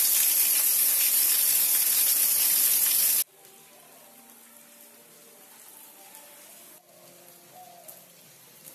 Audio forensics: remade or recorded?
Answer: recorded